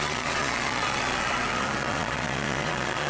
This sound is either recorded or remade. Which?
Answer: remade